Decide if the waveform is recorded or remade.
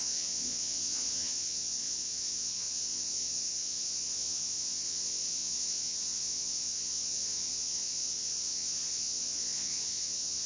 remade